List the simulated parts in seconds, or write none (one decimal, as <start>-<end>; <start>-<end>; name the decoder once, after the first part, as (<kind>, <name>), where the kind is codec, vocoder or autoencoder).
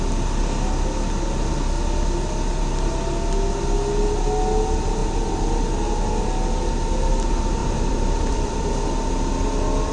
5.0-5.6 (vocoder, BigVGAN v2); 7.6-8.6